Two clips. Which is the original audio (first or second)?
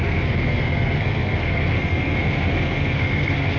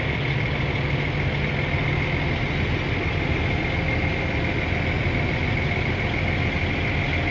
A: second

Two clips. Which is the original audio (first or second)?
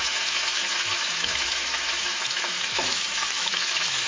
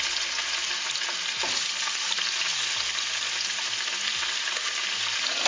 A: second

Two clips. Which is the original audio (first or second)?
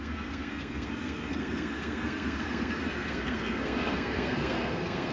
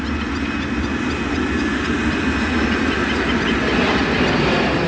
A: second